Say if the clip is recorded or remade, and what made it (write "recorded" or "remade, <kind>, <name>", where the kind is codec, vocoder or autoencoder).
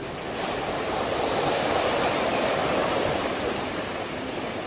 recorded